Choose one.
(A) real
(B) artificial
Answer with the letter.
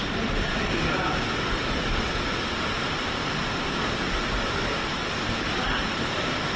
A